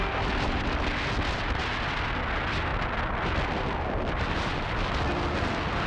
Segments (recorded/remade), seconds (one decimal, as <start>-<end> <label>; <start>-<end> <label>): 0.0-5.9 recorded